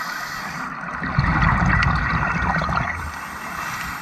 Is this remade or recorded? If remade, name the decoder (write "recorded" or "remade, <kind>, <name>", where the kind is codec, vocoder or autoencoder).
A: recorded